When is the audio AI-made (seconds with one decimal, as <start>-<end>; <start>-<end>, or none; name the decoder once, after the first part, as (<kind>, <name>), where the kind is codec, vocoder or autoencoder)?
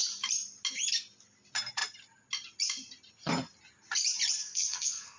4.4-5.2 (codec, SNAC)